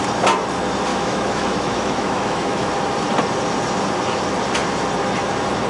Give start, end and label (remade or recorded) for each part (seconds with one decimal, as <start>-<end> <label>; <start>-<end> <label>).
0.0-0.9 recorded; 0.9-2.7 remade; 2.7-5.7 recorded